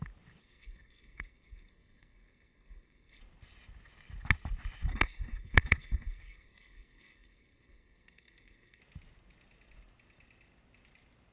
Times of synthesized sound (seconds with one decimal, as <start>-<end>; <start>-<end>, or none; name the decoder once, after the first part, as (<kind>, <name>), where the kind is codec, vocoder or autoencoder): 0.4-3.2 (codec, SNAC); 4.9-8.8